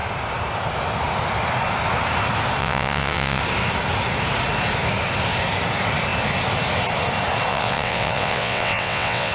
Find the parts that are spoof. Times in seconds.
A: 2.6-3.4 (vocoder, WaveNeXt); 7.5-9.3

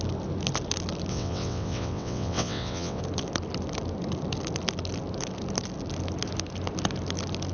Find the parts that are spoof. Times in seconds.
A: 1.1-3.0 (vocoder, WaveNeXt)

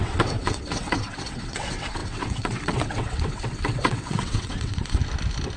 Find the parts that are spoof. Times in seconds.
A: 0.0-5.0 (vocoder, WaveNeXt)

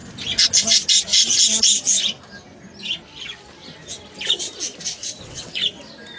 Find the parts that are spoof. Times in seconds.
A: 5.0-5.6 (vocoder, WaveNeXt)

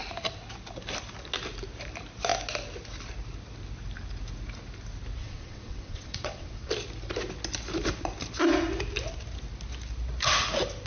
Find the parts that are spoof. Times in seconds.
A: 5.2-6.7 (vocoder, WaveNeXt)

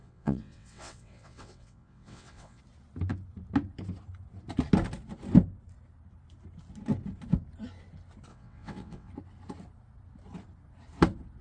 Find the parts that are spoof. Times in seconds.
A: 0.0-2.6 (vocoder, WaveNeXt); 8.3-9.1